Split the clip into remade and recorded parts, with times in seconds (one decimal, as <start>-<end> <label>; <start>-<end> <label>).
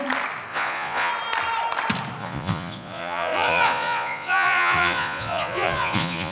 0.0-0.5 recorded; 0.5-1.1 remade; 1.1-2.2 recorded; 2.2-6.3 remade